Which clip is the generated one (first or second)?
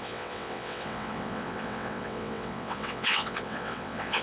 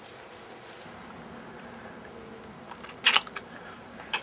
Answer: first